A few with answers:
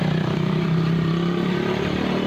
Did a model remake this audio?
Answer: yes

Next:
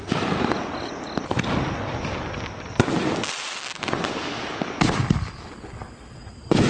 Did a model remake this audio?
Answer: no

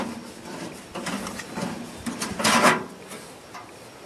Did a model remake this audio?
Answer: no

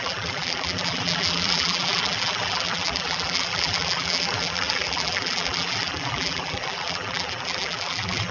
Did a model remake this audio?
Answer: yes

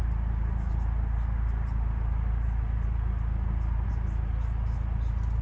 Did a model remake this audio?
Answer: no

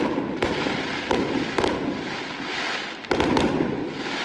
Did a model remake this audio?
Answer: no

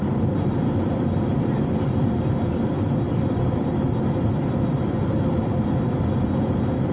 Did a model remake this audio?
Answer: yes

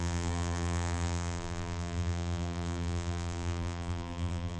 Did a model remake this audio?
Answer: yes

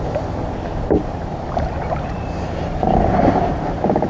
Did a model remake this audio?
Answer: yes